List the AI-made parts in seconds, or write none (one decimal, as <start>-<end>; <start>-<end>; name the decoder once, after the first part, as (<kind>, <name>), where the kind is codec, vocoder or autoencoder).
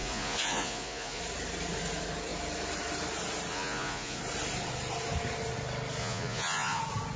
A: 0.0-1.2 (vocoder, Vocos); 3.5-4.2; 6.0-6.8